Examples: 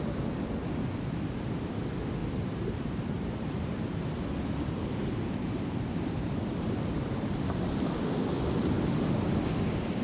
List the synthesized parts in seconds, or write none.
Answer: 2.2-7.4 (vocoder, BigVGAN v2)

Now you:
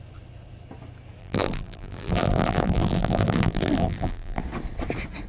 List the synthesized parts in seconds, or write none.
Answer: 1.2-4.4 (vocoder, BigVGAN v2)

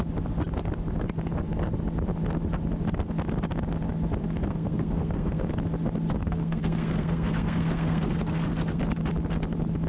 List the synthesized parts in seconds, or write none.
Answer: 4.2-5.5 (codec, SNAC); 6.2-8.8

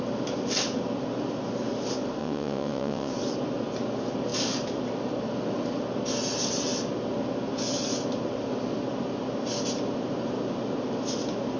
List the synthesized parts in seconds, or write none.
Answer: 2.2-3.1 (vocoder, WaveNeXt)

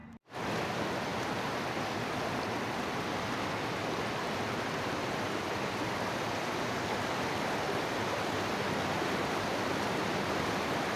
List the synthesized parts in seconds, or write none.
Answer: 0.6-1.1 (vocoder, BigVGAN v2); 3.9-11.0

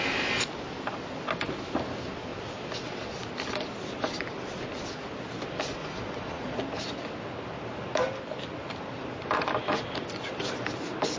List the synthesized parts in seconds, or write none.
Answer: 5.8-6.6 (vocoder, Vocos)